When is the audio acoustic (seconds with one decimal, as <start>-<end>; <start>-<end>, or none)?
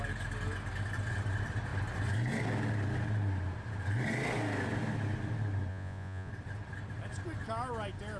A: 0.0-5.7; 6.3-8.2